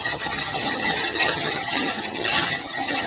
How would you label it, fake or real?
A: fake